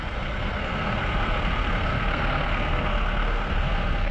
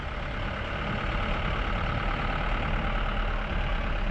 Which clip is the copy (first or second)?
first